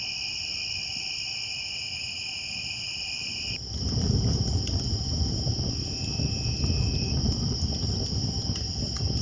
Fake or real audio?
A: real